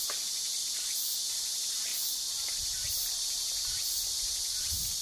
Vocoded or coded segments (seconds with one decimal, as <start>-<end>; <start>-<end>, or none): 0.0-0.6; 1.3-5.0

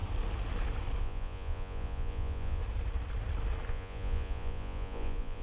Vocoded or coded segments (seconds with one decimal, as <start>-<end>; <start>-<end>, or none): 1.0-2.6; 3.7-5.4

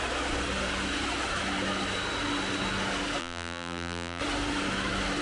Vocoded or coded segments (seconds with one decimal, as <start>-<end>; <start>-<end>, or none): 3.2-4.2

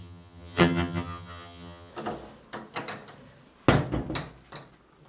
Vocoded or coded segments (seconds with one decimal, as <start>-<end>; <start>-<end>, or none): 0.0-1.9

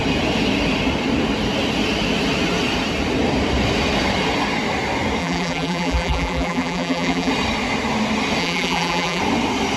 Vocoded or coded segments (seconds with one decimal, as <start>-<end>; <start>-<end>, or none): 5.2-7.3; 8.4-9.2

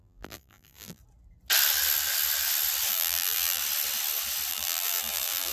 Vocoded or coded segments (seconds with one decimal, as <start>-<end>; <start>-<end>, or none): 0.0-1.0; 2.9-3.6; 4.5-5.5